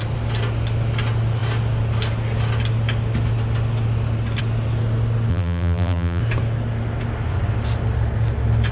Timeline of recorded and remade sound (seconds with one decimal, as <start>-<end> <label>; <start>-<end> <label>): 0.0-5.3 recorded; 5.3-6.2 remade; 6.2-8.7 recorded